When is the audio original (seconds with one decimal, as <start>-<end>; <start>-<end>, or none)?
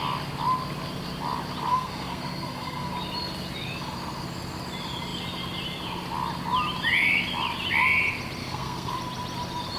0.0-1.7; 2.9-8.4; 8.9-9.8